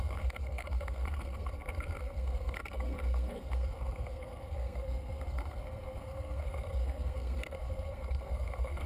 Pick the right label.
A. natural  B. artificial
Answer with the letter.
B